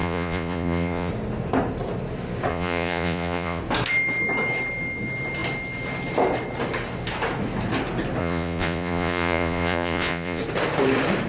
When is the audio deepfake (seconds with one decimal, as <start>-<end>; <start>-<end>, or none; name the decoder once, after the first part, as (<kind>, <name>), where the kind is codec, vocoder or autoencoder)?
0.0-1.1 (vocoder, Vocos); 2.5-3.6; 8.2-10.4